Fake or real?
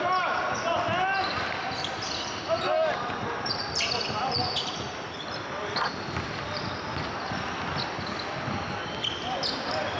real